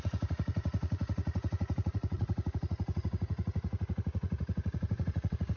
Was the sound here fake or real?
fake